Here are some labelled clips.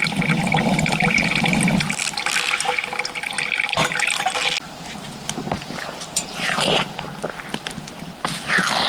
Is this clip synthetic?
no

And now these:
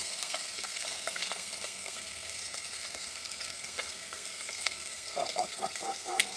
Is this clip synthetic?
yes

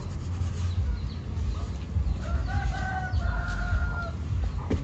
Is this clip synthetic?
no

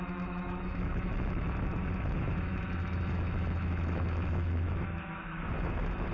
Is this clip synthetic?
yes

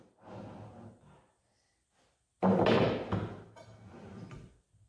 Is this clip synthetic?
no